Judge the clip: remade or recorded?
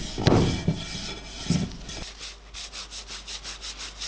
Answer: recorded